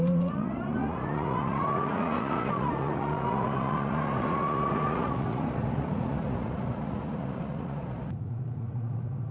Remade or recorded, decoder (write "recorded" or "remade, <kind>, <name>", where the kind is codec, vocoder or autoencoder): remade, vocoder, Vocos